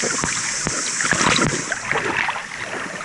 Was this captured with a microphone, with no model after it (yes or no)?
yes